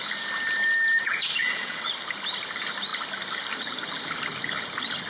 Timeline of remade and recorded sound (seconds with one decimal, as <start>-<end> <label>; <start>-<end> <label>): 0.0-1.4 recorded; 1.4-1.9 remade; 1.9-5.1 recorded